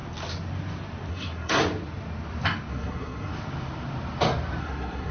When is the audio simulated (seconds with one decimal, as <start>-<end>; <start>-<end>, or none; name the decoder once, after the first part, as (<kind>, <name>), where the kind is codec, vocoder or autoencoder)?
1.1-1.6 (codec, SNAC); 2.7-3.3; 4.6-5.1